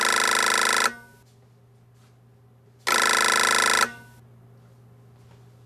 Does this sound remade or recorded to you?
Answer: recorded